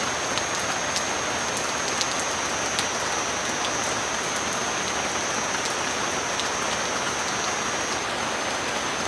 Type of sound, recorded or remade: recorded